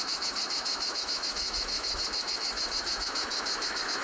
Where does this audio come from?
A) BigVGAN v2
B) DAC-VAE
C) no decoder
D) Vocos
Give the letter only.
B